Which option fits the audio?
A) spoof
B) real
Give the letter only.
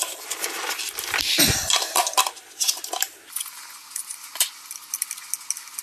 B